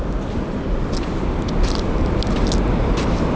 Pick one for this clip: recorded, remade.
recorded